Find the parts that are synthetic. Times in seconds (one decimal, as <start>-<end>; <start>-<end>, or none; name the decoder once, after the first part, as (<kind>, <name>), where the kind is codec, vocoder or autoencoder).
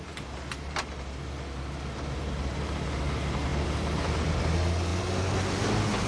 3.5-4.3 (vocoder, BigVGAN v2)